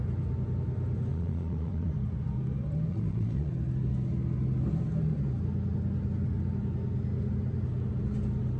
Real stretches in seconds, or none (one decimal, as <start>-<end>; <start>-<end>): 0.0-1.1; 1.9-2.9; 3.5-8.6

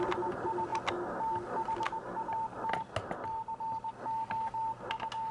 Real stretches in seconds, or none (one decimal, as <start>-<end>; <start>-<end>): 0.0-5.3